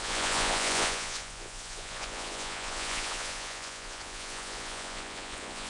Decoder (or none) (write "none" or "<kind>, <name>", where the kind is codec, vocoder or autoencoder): vocoder, Vocos